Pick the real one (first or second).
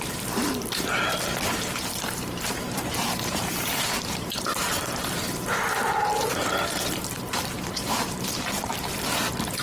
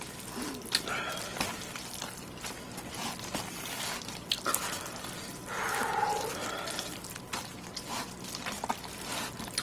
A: second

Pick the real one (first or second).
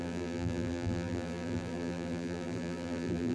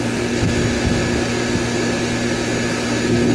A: second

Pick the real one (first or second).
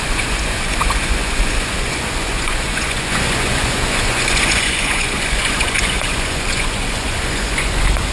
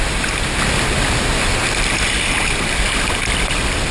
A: second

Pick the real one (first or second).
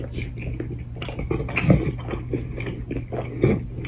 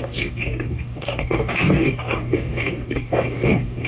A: first